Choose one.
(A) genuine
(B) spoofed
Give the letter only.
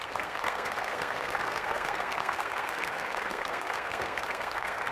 B